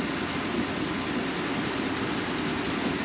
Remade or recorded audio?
recorded